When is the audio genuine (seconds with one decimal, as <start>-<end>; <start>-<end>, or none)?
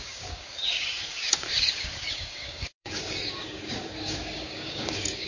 none